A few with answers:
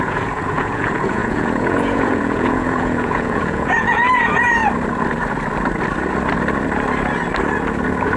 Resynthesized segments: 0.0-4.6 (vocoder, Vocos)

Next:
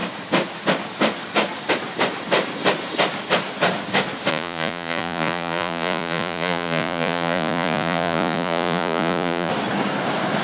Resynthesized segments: 4.3-9.5 (vocoder, Vocos)

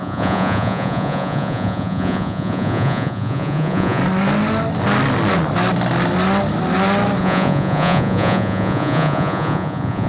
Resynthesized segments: 0.0-4.0 (vocoder, Vocos); 7.2-10.1